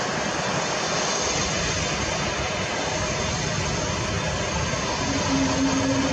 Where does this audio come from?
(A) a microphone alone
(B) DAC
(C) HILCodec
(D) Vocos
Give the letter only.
A